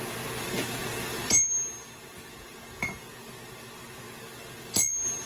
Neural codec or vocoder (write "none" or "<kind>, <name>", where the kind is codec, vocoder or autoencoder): none